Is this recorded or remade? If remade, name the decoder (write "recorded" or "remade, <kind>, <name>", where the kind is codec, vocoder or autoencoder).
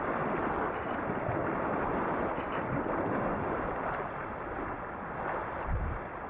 recorded